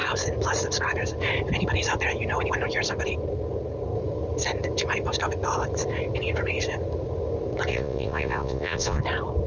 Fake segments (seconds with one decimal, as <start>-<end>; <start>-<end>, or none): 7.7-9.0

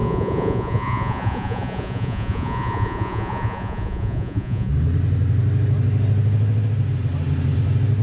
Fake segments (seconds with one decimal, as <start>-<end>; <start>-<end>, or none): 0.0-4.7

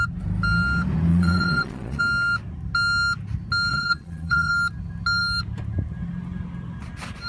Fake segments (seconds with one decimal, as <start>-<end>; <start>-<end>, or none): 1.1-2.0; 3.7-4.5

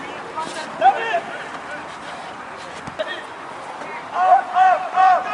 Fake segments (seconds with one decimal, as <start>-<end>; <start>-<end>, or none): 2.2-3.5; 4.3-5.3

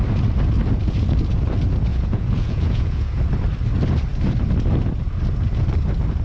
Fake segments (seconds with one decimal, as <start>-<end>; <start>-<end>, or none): 1.9-3.2

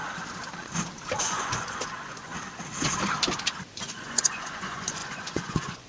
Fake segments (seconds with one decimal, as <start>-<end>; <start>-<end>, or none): 1.2-2.3; 3.8-5.9